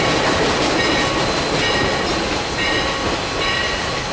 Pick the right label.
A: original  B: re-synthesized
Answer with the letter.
A